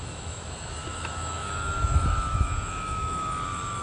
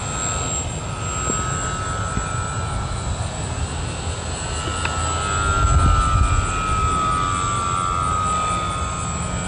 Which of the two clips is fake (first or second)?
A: first